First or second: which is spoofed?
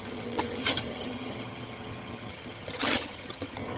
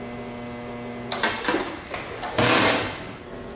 first